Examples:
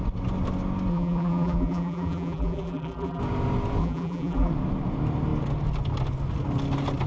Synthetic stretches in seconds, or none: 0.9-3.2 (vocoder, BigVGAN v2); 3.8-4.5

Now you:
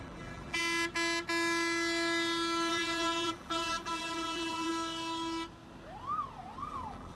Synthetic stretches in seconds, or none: 0.0-0.6 (vocoder, BigVGAN v2); 2.7-4.7; 6.6-7.1

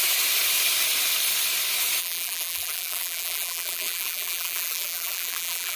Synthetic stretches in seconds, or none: 2.0-5.8 (vocoder, BigVGAN v2)

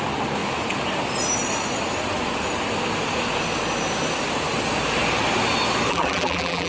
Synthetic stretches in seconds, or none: 5.9-6.7 (vocoder, BigVGAN v2)

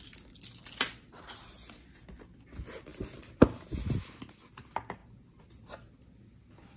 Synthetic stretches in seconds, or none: none

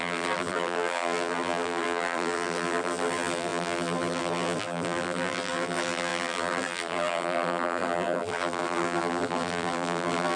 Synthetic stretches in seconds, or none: 0.0-10.4 (vocoder, BigVGAN v2)